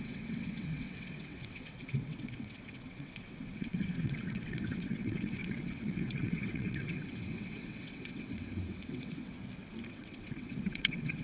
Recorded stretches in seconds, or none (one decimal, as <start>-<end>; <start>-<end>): 9.3-9.9

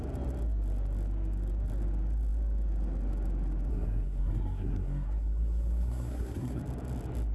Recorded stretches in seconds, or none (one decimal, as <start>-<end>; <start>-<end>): 0.0-3.7; 6.6-7.3

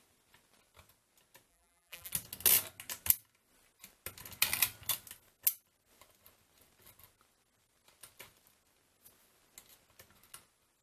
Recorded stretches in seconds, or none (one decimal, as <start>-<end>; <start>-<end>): 0.0-1.5; 2.1-10.8

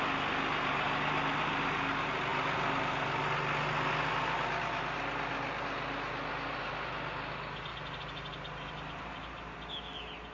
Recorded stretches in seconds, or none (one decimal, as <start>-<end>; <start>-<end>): 0.0-10.3

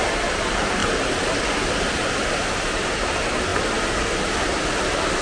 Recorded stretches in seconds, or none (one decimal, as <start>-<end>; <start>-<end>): 0.0-0.8; 1.4-5.2

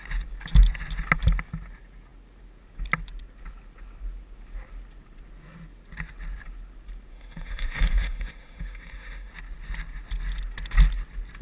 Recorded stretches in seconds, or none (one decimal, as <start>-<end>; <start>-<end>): 0.0-7.1; 9.3-11.4

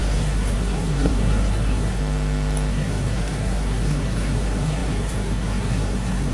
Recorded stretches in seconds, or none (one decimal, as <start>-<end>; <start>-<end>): 2.0-2.7